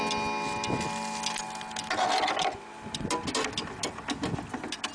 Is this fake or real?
real